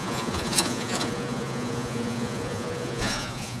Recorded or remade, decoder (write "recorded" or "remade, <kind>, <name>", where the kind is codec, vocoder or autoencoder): remade, vocoder, Vocos